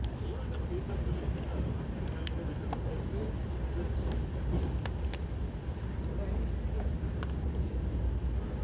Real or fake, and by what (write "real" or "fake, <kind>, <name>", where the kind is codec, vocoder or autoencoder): real